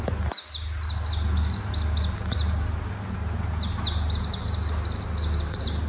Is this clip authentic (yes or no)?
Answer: yes